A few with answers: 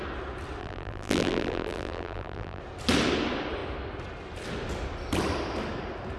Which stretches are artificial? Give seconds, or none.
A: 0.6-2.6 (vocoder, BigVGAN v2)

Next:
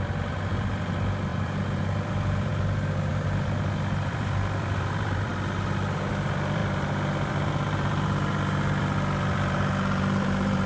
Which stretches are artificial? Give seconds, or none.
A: 0.0-2.5 (vocoder, BigVGAN v2); 3.1-5.3; 6.1-10.7

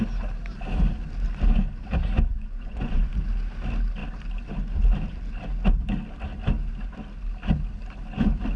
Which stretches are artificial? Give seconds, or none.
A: 2.3-3.1 (vocoder, Vocos)

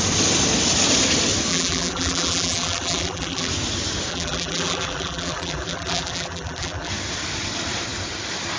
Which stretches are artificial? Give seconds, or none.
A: 1.5-3.5 (vocoder, BigVGAN v2); 4.1-6.9

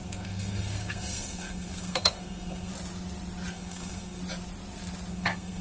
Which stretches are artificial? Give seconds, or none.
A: 0.0-2.7 (codec, SNAC); 3.5-4.2; 5.1-5.6

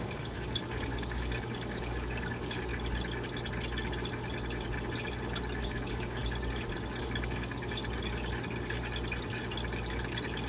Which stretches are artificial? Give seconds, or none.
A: 0.0-2.7 (codec, DAC); 5.6-6.2; 7.0-7.8

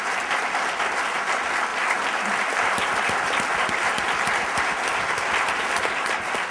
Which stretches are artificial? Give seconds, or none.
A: 1.7-5.6 (vocoder, BigVGAN v2)